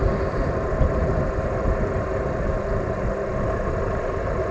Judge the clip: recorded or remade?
recorded